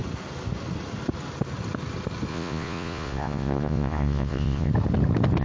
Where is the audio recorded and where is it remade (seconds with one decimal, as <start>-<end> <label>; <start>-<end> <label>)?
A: 0.0-2.3 recorded; 2.3-4.7 remade; 4.7-5.4 recorded

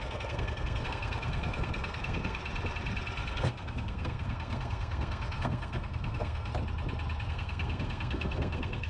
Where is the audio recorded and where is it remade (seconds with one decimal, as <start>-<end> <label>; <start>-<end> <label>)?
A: 0.0-2.4 remade; 2.4-3.3 recorded; 3.3-6.5 remade; 6.5-7.3 recorded; 7.3-8.9 remade

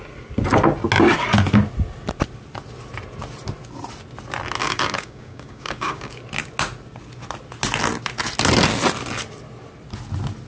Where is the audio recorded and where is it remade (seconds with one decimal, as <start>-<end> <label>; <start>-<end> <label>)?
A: 0.0-4.6 recorded; 4.6-6.2 remade; 6.2-10.5 recorded

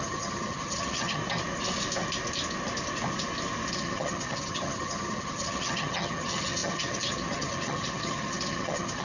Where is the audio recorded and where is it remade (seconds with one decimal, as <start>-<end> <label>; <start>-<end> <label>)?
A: 0.0-1.2 remade; 1.2-3.7 recorded; 3.7-9.0 remade